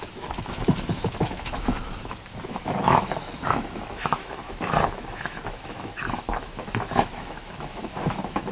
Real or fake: fake